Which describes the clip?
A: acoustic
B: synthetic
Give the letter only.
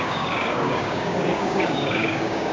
B